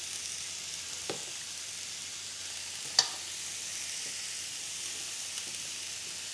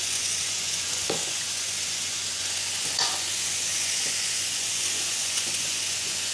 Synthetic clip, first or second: second